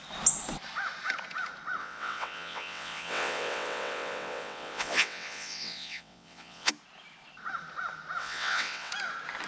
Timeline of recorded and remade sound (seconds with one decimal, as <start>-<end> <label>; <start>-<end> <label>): 0.0-1.8 recorded; 1.8-6.7 remade; 6.7-8.2 recorded; 8.2-8.9 remade; 8.9-9.5 recorded